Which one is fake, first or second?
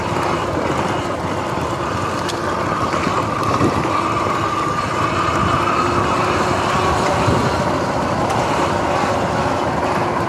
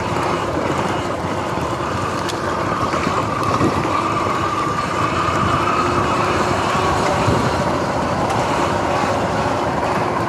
second